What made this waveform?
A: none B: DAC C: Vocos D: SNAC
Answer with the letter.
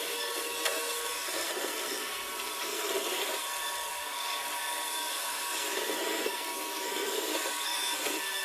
D